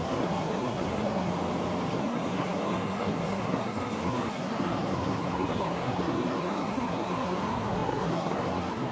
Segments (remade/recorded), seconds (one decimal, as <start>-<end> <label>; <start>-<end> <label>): 0.0-1.3 remade; 1.3-1.9 recorded; 1.9-8.9 remade